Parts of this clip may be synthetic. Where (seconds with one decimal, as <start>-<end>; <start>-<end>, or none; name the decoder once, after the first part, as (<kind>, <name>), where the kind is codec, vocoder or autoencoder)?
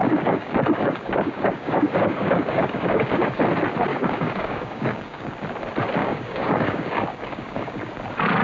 0.0-3.4 (codec, DAC); 3.9-5.3; 6.0-7.9